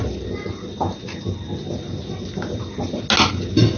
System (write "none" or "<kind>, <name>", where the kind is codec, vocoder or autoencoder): none